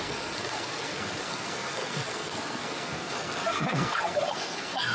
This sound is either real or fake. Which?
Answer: fake